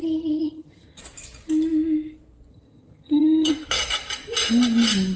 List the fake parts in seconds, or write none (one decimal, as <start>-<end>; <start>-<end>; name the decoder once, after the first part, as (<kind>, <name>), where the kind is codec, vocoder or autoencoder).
0.0-1.0 (vocoder, HiFi-GAN); 2.5-3.5